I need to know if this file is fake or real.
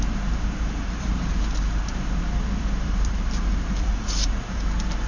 fake